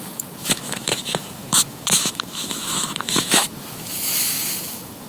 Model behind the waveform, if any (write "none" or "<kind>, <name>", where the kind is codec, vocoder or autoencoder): autoencoder, DAC-VAE